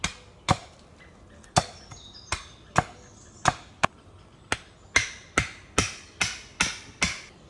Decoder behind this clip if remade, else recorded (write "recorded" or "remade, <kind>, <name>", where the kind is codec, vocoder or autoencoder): recorded